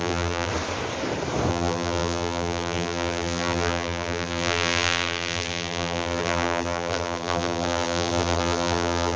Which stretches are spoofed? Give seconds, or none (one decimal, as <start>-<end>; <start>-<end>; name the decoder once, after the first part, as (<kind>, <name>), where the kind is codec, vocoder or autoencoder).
0.0-0.5 (vocoder, BigVGAN v2); 1.5-9.2